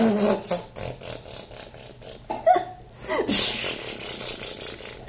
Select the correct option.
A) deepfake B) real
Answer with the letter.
B